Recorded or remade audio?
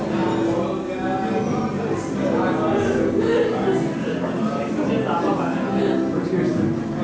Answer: recorded